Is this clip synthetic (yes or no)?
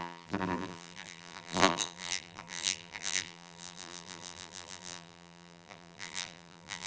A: yes